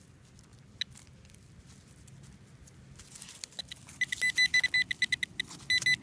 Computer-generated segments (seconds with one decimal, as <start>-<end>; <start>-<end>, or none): none